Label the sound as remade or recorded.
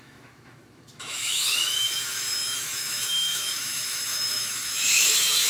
remade